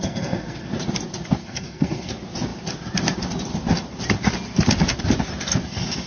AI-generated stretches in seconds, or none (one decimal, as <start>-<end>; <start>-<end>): 0.0-0.7; 1.4-2.1